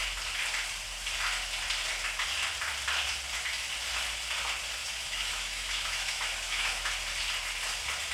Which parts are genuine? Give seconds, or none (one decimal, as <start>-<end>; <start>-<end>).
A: 0.0-4.8; 6.9-8.1